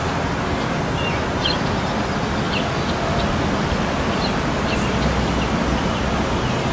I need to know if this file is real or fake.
real